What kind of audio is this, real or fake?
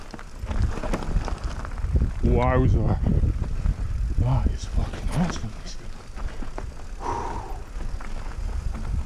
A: real